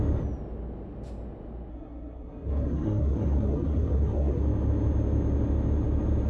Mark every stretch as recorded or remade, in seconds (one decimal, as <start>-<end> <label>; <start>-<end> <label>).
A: 0.0-1.7 recorded; 1.7-4.4 remade; 4.4-6.3 recorded